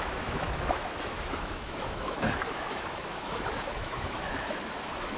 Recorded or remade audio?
remade